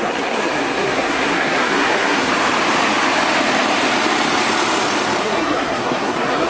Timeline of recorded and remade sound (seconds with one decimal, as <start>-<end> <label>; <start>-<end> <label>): 0.0-2.3 remade; 2.3-5.2 recorded; 5.2-6.5 remade